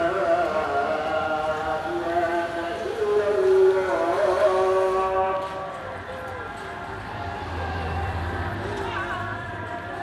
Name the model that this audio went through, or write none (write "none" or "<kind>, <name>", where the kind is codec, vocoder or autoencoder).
vocoder, BigVGAN v2